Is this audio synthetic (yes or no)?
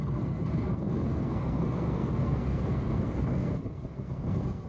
yes